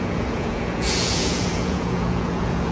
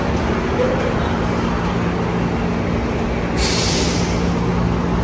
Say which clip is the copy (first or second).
first